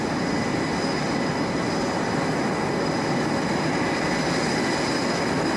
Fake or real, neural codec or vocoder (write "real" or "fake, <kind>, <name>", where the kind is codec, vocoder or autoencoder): real